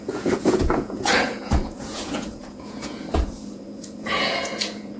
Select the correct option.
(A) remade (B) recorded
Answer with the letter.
A